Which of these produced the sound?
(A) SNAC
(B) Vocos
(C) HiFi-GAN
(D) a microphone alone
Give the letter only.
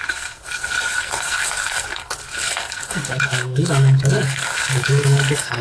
A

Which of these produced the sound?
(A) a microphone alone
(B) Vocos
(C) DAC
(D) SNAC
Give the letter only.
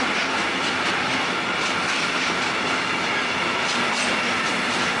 A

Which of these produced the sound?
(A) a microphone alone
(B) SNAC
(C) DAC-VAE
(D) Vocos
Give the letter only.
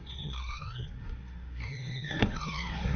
B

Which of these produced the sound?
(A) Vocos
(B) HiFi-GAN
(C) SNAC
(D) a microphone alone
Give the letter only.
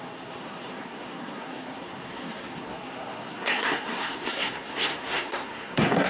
C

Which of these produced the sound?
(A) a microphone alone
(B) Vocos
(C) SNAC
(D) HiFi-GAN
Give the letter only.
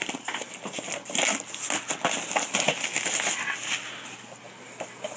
A